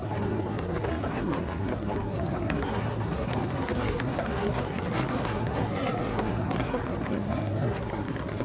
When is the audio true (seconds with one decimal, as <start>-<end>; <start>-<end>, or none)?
none